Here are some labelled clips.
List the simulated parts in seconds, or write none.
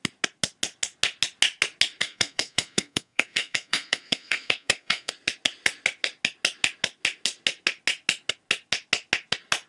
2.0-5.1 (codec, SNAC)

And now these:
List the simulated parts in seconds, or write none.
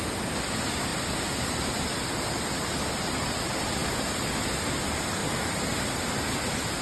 none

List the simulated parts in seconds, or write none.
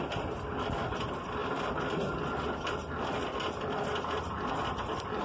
none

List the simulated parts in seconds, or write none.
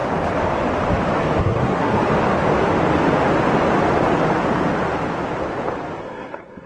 1.4-2.0 (codec, SNAC); 6.0-6.7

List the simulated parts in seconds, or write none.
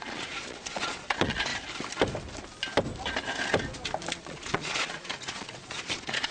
0.0-1.5 (vocoder, Vocos); 4.2-6.3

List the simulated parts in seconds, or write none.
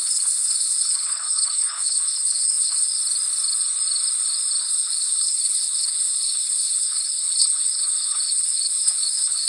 0.0-3.0 (codec, HILCodec); 4.6-9.5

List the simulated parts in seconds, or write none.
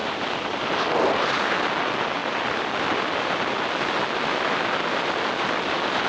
0.0-0.6 (vocoder, BigVGAN v2); 2.2-2.9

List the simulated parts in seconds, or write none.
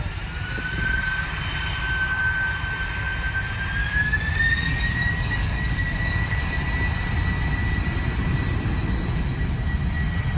3.8-6.4 (codec, DAC)